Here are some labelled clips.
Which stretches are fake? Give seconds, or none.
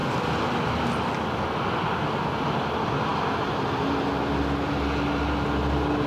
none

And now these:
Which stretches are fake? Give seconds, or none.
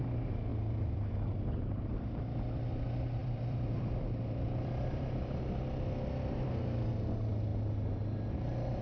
0.5-1.1; 3.2-5.4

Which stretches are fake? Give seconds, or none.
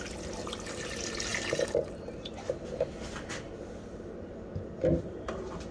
1.3-2.3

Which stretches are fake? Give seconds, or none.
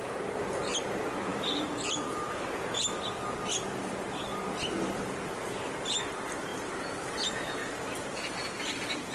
1.3-2.7; 7.6-8.7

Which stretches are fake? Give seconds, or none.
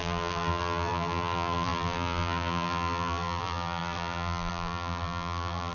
0.0-5.7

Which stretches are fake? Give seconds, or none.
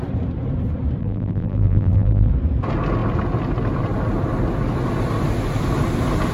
1.0-2.3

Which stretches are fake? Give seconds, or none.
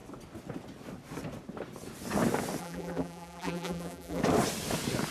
2.6-4.2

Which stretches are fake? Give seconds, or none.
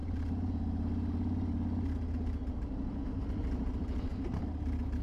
none